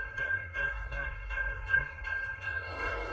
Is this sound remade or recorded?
remade